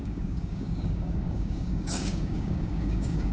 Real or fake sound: fake